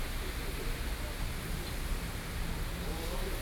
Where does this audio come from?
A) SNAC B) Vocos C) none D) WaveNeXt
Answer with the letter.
C